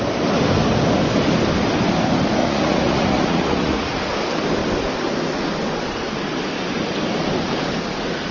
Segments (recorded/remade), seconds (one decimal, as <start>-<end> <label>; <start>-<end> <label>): 0.0-2.4 recorded; 2.4-4.0 remade; 4.0-8.3 recorded